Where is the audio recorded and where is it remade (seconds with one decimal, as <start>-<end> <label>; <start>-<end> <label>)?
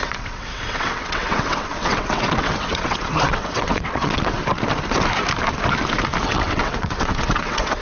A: 0.0-4.4 remade; 4.4-6.2 recorded; 6.2-7.8 remade